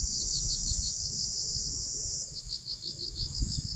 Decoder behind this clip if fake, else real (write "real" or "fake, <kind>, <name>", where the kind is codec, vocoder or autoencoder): fake, autoencoder, DAC-VAE